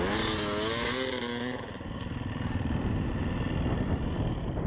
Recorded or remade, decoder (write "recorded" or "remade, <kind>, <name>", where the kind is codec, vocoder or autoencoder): recorded